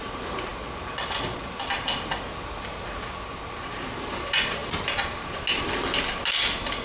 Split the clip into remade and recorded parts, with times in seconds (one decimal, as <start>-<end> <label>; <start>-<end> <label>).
0.0-6.8 recorded